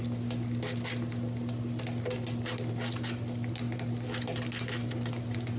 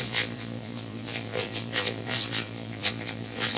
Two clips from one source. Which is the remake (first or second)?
second